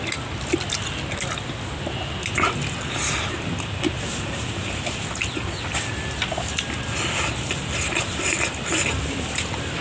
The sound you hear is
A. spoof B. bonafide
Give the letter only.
B